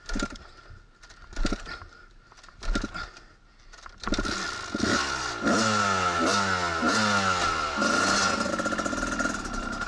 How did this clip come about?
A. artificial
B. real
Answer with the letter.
B